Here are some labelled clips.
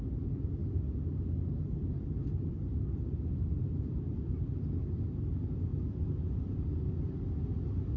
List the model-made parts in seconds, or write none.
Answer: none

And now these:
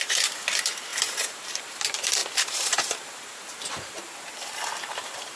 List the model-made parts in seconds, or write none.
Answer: 0.0-5.4 (vocoder, BigVGAN v2)

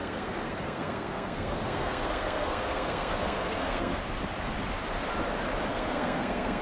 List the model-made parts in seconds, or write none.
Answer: 0.0-4.0 (codec, SNAC); 5.7-6.6